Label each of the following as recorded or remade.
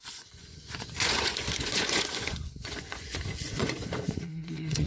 remade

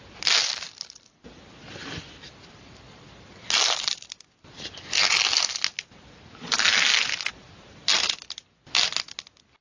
recorded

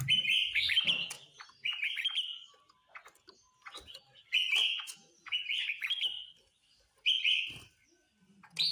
recorded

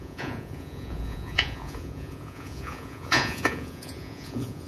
remade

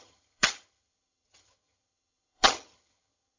remade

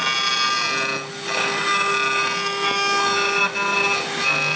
recorded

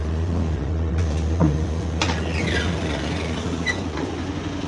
remade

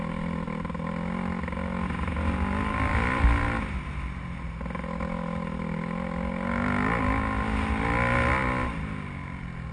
recorded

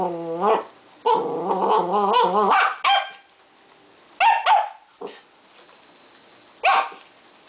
recorded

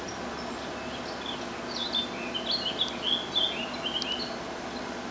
recorded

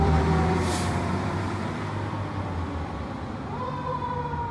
remade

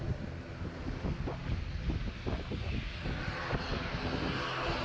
recorded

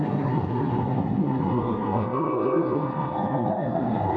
remade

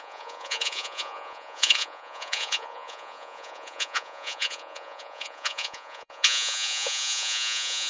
remade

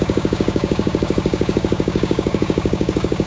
remade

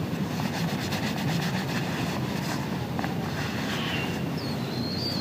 recorded